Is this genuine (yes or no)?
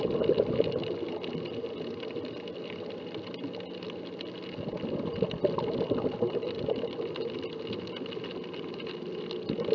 yes